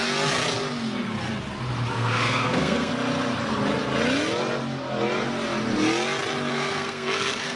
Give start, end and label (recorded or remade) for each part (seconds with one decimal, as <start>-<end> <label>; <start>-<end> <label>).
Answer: 0.0-1.9 recorded; 1.9-2.9 remade; 2.9-6.5 recorded; 6.5-7.6 remade